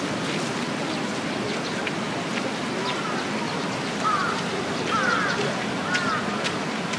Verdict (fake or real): real